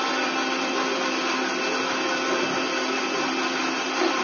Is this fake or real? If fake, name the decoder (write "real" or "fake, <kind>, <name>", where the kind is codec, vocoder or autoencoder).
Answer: real